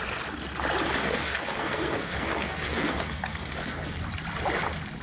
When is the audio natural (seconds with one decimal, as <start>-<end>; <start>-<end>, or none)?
0.0-1.0; 4.0-5.0